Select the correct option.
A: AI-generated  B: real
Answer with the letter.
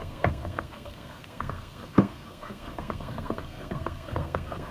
A